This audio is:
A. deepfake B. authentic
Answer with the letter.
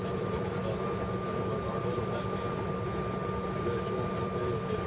B